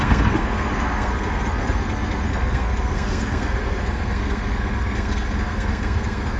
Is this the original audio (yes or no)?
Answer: no